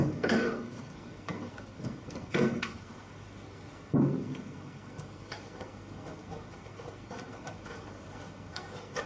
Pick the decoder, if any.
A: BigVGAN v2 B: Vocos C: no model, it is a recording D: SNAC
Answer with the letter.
D